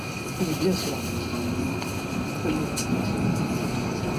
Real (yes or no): yes